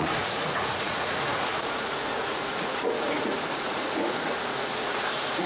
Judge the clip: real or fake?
fake